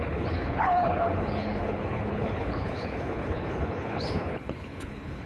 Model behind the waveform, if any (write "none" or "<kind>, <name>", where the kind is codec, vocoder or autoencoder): codec, HILCodec